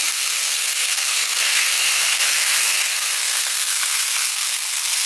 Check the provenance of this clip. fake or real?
fake